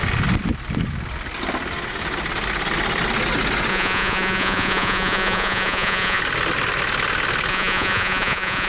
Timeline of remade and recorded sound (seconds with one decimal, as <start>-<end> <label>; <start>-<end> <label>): 0.0-3.7 recorded; 3.7-6.2 remade; 6.2-7.5 recorded; 7.5-8.7 remade